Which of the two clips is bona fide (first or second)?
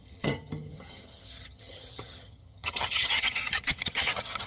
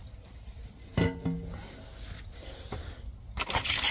second